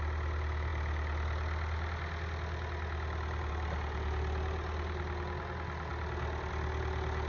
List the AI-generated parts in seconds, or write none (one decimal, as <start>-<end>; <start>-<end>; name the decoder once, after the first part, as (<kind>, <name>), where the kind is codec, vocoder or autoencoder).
none